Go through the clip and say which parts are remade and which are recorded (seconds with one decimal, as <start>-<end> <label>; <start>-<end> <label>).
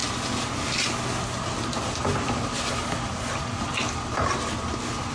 0.0-5.1 recorded